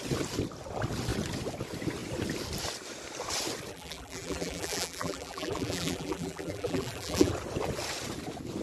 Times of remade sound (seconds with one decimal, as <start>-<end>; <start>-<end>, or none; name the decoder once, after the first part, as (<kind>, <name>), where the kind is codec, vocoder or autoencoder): 3.7-7.3 (vocoder, BigVGAN v2)

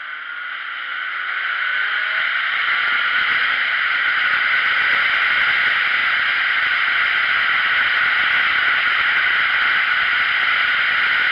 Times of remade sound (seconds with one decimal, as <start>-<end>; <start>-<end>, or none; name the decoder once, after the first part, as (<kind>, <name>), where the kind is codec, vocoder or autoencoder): none